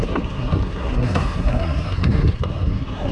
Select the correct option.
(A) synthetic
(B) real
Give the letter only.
A